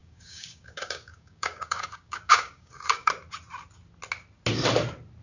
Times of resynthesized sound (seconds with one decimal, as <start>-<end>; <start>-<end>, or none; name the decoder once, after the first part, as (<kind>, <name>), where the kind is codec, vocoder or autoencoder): 0.0-3.1 (codec, DAC)